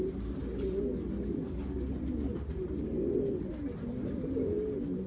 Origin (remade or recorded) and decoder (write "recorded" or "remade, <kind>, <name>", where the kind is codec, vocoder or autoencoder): recorded